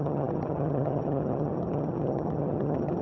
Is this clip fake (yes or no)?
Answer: yes